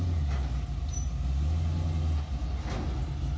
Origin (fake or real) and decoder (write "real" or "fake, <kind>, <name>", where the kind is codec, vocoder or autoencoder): real